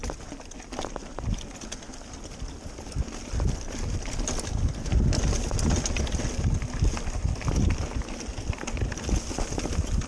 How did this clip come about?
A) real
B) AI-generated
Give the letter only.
A